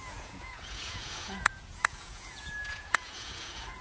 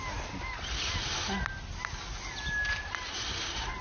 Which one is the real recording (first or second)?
second